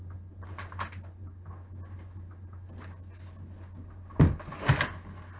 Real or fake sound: real